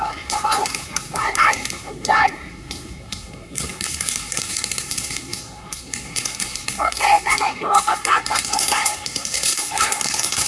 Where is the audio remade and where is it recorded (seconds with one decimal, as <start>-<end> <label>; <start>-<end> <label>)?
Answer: 0.0-10.5 remade

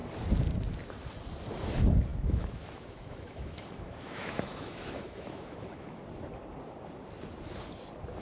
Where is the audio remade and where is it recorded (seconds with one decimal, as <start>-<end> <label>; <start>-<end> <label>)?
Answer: 0.0-2.1 recorded; 2.1-6.0 remade; 6.0-8.2 recorded

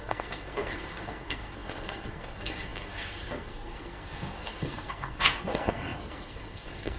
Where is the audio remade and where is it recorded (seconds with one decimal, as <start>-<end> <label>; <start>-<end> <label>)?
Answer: 0.0-7.0 remade